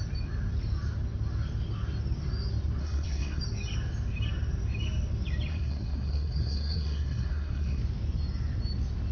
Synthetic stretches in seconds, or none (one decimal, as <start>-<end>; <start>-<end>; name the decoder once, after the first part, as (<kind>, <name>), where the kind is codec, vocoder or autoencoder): 2.8-3.4 (codec, SNAC); 5.5-7.8